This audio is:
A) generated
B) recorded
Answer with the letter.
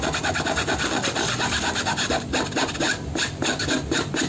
B